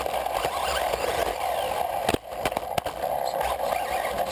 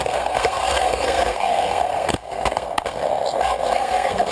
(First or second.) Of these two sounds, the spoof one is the second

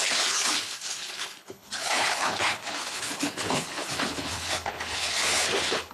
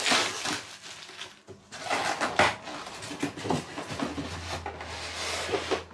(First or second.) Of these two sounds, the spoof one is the first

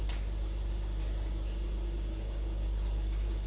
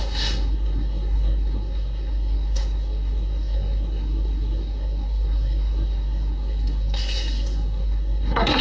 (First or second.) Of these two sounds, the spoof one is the second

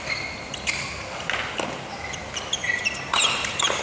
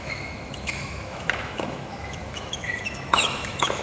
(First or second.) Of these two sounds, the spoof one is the second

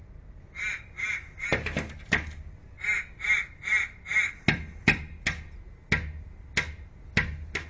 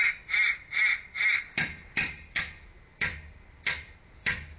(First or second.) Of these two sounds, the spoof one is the second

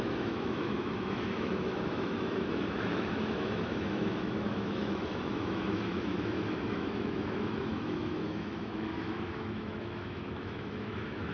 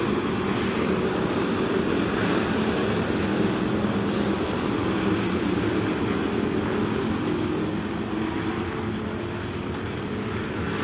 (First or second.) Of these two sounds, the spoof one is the first